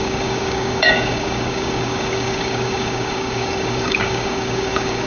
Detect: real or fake fake